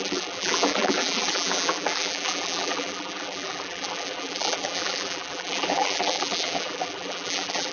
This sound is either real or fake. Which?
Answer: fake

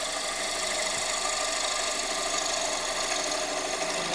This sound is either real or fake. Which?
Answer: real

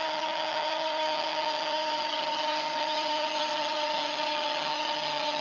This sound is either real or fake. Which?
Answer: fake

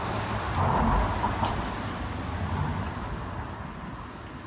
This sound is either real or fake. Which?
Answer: real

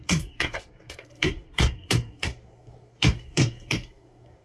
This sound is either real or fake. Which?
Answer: fake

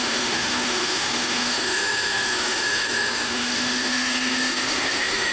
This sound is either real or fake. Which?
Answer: fake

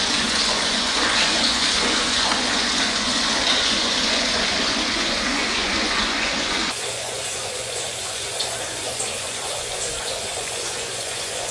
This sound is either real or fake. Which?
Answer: fake